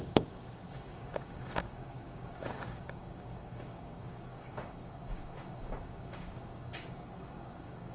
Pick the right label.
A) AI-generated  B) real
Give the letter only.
A